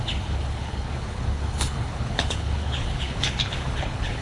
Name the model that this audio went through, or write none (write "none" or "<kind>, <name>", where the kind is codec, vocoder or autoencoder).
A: codec, HILCodec